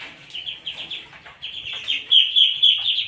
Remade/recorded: recorded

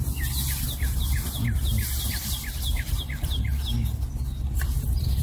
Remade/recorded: recorded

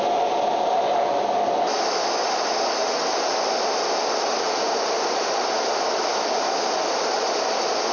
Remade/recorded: recorded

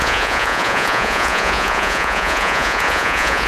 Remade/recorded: remade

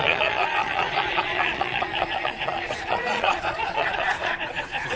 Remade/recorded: remade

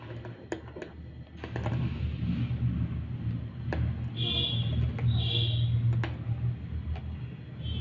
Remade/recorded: recorded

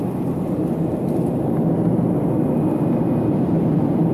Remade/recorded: recorded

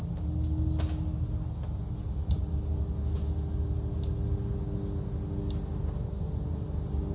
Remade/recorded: recorded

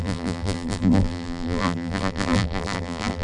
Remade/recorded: remade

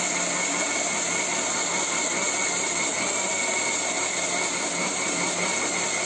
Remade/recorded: recorded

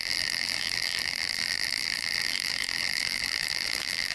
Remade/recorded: remade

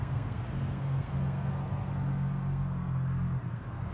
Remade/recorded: remade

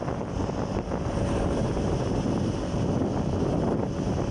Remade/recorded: recorded